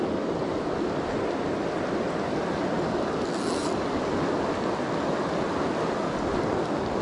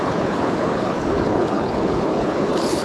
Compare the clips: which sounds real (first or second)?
first